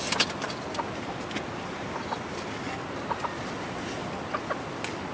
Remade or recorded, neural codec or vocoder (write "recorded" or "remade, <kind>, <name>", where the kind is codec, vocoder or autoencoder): recorded